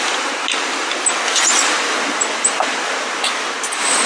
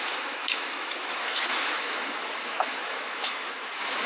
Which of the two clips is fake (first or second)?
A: second